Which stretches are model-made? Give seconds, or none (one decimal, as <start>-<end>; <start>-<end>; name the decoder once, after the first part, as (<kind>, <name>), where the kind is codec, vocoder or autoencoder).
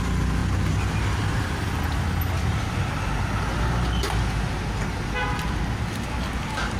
none